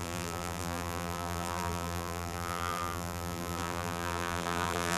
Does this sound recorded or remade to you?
remade